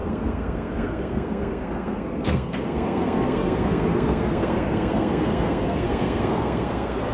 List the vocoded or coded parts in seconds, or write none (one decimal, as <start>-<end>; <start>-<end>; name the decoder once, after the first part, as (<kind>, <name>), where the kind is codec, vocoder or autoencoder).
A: 0.0-7.1 (codec, SNAC)